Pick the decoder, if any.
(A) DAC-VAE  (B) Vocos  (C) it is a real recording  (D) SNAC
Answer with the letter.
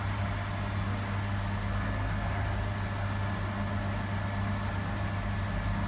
C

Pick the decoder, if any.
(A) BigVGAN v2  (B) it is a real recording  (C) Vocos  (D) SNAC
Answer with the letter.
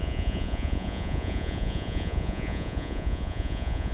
C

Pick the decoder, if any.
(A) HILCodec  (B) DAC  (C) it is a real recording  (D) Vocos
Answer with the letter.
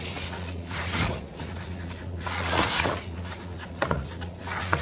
D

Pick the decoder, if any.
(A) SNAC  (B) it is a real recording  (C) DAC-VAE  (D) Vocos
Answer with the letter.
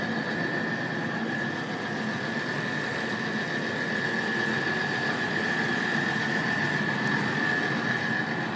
B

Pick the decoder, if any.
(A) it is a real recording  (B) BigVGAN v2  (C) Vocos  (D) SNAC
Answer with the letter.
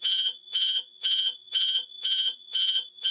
C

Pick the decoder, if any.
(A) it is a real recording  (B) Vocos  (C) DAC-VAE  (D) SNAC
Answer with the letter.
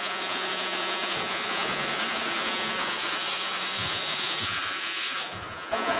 B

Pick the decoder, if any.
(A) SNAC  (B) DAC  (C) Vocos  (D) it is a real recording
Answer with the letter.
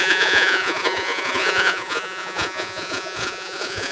C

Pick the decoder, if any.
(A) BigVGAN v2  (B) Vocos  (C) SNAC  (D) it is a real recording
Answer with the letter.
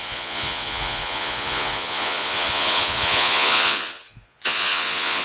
B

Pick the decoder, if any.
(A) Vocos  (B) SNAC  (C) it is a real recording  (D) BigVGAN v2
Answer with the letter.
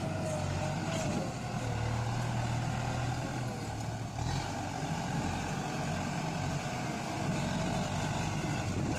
C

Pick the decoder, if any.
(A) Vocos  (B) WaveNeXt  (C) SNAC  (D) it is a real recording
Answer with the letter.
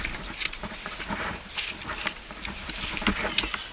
D